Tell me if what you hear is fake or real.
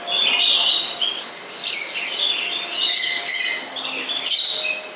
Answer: real